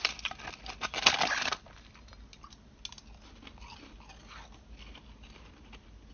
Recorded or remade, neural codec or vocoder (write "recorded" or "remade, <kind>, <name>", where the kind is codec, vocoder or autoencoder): recorded